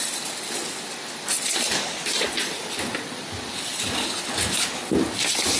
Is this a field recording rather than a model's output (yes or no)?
yes